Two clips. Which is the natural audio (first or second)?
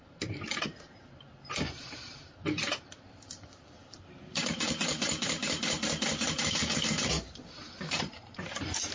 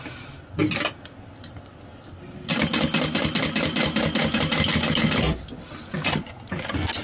second